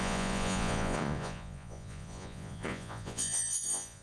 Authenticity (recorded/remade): remade